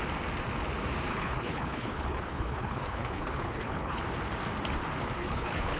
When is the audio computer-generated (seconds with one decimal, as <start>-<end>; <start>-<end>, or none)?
1.1-4.0; 5.2-5.8